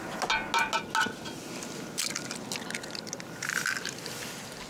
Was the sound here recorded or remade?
recorded